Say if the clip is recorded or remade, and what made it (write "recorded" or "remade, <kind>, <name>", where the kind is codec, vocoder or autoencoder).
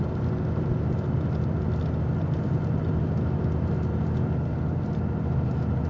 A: recorded